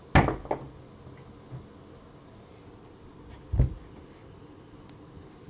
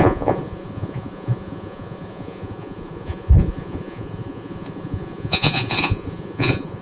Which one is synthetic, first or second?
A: second